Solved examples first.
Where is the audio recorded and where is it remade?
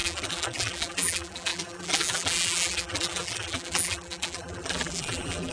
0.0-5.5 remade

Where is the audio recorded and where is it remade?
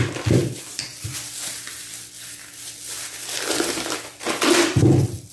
0.0-5.3 recorded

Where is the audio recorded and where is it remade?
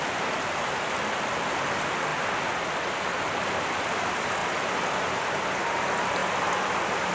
0.0-7.1 recorded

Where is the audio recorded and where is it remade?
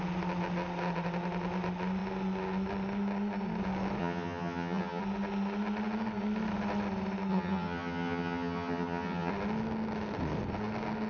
0.0-4.0 recorded; 4.0-5.0 remade; 5.0-7.3 recorded; 7.3-9.3 remade; 9.3-11.1 recorded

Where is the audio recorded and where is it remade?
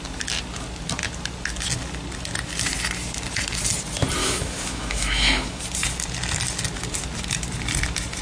0.0-4.2 recorded; 4.2-5.6 remade; 5.6-8.2 recorded